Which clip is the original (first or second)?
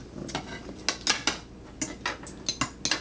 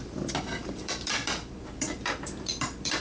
first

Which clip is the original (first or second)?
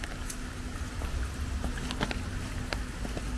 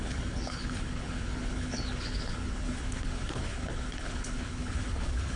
first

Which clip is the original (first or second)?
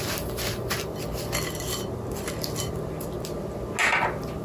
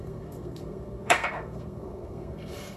first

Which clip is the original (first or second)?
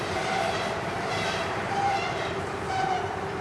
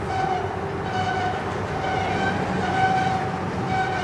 second